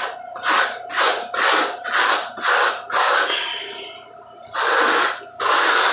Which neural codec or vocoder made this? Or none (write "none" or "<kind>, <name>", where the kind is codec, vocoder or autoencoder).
none